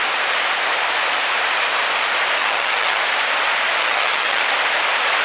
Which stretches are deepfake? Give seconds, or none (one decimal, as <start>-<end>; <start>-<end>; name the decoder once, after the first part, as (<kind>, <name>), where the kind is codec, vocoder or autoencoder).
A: 2.4-3.0 (vocoder, HiFi-GAN); 3.8-4.4